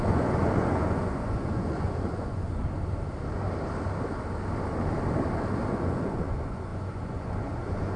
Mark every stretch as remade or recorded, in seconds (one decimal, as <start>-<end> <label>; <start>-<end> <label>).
0.0-2.6 remade; 2.6-5.7 recorded; 5.7-8.0 remade